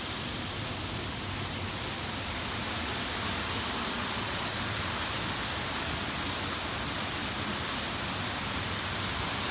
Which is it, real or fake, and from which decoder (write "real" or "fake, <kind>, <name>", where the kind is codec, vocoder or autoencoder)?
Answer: real